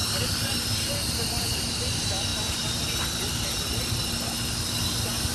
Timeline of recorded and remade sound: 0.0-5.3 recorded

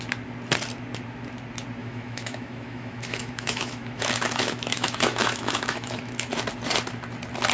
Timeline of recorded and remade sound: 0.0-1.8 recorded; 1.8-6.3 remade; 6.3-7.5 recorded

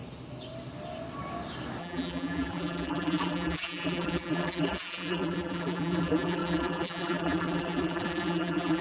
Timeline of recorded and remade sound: 0.0-1.8 recorded; 1.8-8.8 remade